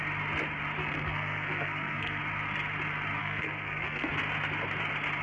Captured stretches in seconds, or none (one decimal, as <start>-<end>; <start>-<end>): 0.0-0.8; 2.2-3.2; 4.1-5.2